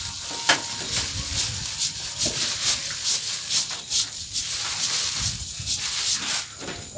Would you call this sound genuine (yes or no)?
yes